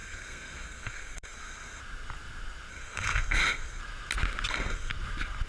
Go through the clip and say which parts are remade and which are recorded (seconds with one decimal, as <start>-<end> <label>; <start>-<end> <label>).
0.0-1.8 remade; 1.8-2.7 recorded; 2.7-3.8 remade; 3.8-4.5 recorded; 4.5-4.9 remade; 4.9-5.5 recorded